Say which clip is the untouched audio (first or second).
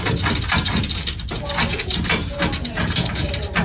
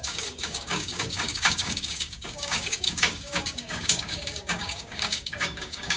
first